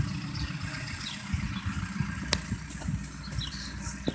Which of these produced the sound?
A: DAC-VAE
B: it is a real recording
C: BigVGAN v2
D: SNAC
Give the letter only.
B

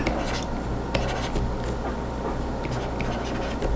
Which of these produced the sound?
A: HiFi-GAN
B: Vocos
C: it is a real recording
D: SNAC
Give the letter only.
C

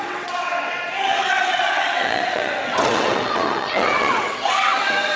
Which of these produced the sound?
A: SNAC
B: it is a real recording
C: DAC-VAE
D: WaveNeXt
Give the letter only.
D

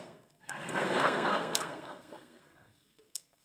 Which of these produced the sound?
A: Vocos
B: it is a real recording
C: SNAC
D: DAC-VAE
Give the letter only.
C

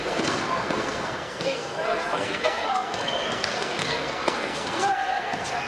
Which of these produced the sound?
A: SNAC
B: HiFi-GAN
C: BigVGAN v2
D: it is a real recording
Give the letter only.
A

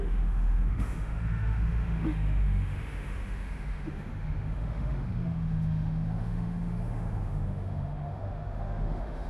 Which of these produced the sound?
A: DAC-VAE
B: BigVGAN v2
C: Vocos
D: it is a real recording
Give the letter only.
A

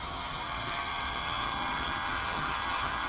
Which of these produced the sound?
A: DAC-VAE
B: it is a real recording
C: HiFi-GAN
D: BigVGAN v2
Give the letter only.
C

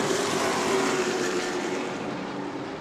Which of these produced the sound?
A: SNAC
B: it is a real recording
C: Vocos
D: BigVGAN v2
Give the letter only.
D